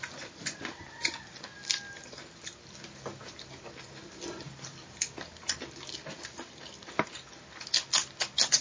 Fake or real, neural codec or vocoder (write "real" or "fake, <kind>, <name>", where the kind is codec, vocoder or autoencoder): fake, vocoder, BigVGAN v2